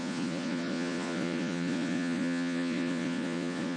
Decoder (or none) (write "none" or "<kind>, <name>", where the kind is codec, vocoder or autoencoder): vocoder, Vocos